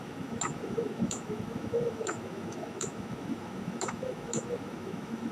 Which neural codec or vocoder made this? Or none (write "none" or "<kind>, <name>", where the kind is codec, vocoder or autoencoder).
autoencoder, DAC-VAE